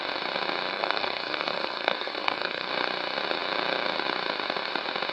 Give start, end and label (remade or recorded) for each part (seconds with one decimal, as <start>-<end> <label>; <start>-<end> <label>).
0.0-0.7 recorded; 0.7-2.7 remade; 2.7-5.1 recorded